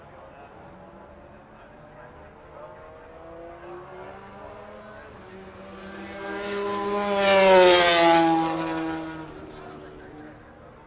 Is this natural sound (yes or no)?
yes